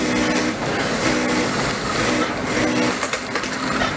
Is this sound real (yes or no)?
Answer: yes